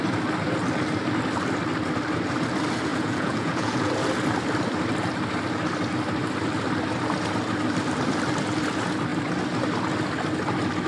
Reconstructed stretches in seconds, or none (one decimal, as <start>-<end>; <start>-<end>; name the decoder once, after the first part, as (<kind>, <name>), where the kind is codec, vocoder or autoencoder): 2.9-3.9 (vocoder, Vocos)